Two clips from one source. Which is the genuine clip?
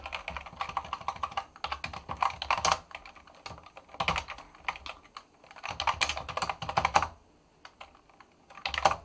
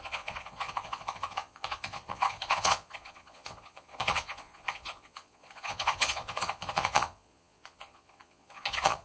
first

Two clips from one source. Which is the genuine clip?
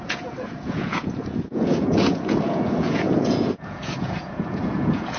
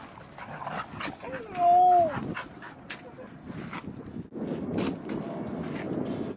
second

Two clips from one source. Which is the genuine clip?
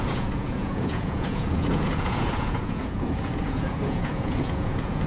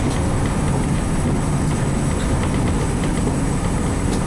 second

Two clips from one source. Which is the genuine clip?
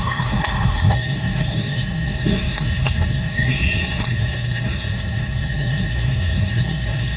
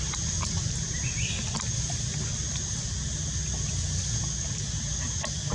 second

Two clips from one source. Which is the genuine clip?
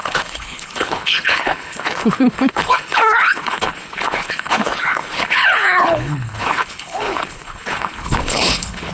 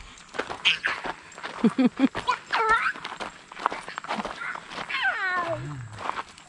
second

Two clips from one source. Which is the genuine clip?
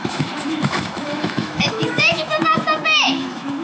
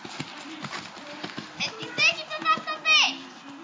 second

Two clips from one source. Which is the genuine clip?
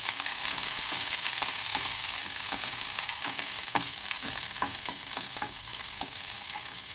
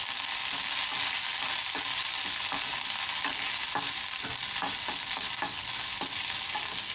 second